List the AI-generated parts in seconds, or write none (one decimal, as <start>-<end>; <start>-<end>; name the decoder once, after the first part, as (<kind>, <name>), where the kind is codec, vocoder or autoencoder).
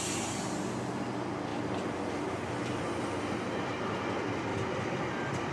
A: 1.5-2.5 (vocoder, BigVGAN v2); 4.5-5.5